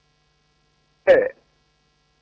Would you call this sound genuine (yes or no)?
yes